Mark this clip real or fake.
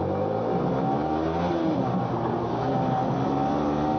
real